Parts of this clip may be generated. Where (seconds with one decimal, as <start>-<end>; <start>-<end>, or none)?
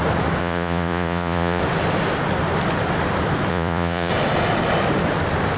0.4-1.6; 3.5-4.1